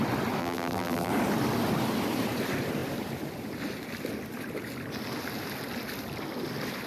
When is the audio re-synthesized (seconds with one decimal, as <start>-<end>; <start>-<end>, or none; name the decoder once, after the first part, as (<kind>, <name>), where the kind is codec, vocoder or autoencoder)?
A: 0.4-1.1 (vocoder, BigVGAN v2)

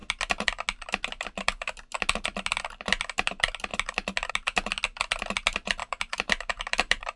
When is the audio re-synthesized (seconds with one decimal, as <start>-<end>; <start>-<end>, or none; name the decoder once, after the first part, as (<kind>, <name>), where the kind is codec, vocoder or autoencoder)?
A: 5.8-7.2 (vocoder, BigVGAN v2)

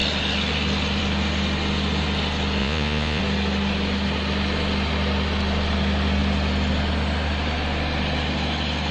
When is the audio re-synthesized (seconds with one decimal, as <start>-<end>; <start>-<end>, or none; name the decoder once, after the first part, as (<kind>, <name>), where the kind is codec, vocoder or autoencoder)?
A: 2.6-3.2 (vocoder, Vocos)

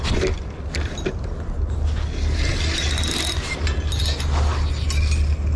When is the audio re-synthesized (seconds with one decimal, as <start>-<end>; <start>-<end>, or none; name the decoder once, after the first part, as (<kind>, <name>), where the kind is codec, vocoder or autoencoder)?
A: none

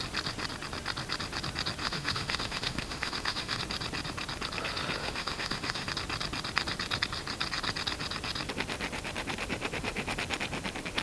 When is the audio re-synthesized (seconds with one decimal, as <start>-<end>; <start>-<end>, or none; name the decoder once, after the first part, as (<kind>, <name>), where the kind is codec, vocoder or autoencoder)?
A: 1.8-3.6 (autoencoder, DAC-VAE); 5.0-5.9

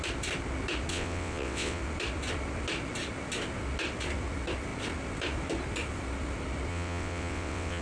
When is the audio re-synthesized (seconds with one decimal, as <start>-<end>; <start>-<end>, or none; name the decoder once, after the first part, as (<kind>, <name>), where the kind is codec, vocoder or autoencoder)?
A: 0.9-1.8 (vocoder, WaveNeXt); 6.7-7.8

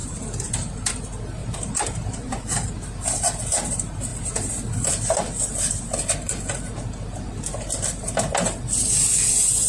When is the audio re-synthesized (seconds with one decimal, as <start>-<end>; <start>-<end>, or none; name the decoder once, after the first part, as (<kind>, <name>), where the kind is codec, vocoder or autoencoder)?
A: 0.0-0.9 (vocoder, BigVGAN v2); 1.4-2.7

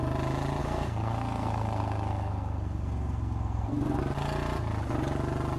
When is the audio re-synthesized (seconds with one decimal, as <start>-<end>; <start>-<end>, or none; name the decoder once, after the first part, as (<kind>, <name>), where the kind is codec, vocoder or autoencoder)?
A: 0.6-4.0 (codec, SNAC)